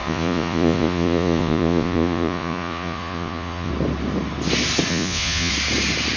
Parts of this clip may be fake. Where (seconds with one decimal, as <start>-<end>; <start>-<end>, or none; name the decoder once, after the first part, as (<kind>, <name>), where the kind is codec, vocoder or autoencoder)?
0.0-3.7 (vocoder, Vocos); 4.9-5.5